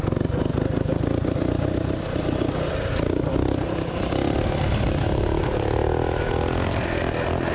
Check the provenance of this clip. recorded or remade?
recorded